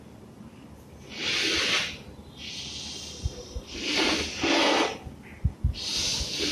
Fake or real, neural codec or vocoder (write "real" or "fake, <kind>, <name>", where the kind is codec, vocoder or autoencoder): real